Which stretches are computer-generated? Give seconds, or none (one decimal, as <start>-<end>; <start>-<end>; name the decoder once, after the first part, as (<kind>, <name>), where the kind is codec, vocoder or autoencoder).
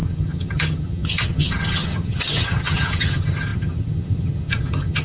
0.0-5.0 (vocoder, HiFi-GAN)